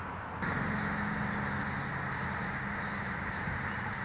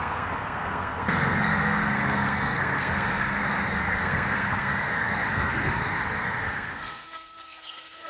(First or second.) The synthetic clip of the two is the second